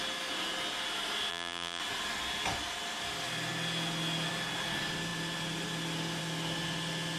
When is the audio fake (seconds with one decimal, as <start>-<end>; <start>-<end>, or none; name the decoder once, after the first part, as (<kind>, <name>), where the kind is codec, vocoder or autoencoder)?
1.3-1.8 (vocoder, BigVGAN v2)